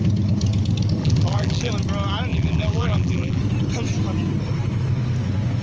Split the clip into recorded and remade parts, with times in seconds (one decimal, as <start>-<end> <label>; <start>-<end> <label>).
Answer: 0.0-1.0 recorded; 1.0-1.7 remade; 1.7-2.3 recorded; 2.3-3.4 remade; 3.4-5.6 recorded